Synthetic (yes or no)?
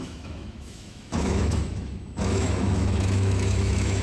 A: yes